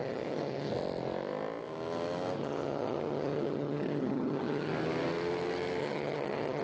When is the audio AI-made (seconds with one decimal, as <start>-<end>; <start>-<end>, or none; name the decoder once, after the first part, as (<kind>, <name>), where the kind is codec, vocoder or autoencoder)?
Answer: 0.0-0.7 (vocoder, HiFi-GAN); 2.4-4.7; 5.8-6.6

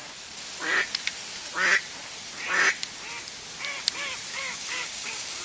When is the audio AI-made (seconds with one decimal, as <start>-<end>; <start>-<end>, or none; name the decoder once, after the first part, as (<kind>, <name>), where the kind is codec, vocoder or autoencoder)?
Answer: 4.3-5.4 (codec, DAC)

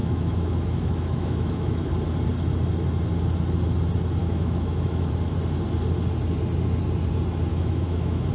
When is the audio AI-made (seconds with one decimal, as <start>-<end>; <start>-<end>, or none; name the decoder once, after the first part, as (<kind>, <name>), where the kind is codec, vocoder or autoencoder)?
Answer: 0.0-1.9 (autoencoder, DAC-VAE); 4.2-5.1; 7.5-8.3

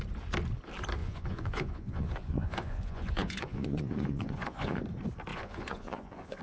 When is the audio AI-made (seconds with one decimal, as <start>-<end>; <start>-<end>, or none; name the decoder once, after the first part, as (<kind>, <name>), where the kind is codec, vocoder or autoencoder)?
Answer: 1.0-4.8 (vocoder, Vocos); 5.3-6.4

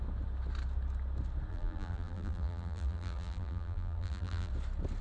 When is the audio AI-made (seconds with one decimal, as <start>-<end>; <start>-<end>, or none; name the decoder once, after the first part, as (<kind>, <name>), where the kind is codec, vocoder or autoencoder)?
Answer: 1.5-4.5 (vocoder, BigVGAN v2)

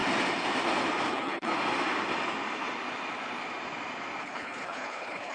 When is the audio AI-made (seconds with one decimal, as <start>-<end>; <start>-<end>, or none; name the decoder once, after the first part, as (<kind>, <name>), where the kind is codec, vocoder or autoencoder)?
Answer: 1.1-1.5 (codec, HILCodec); 4.2-5.3

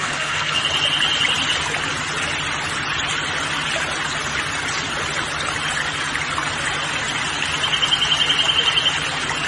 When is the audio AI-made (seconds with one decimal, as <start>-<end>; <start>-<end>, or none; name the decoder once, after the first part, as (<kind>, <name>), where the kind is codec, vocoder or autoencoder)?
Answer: 0.0-0.6 (codec, SNAC)

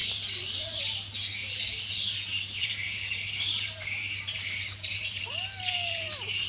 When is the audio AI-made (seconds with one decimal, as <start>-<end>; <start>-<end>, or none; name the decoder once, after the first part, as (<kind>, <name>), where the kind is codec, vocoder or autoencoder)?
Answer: 0.0-0.8 (vocoder, BigVGAN v2); 1.4-5.2